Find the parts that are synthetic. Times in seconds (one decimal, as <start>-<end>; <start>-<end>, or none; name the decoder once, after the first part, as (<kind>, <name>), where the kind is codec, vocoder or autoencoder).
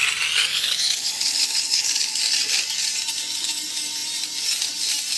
0.5-2.2 (codec, HILCodec)